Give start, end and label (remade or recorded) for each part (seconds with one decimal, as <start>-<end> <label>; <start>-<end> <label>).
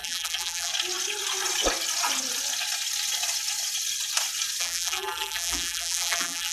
0.0-0.7 remade; 0.7-4.6 recorded; 4.6-6.5 remade